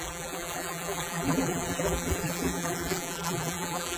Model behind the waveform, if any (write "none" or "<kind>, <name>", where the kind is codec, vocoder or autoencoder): vocoder, BigVGAN v2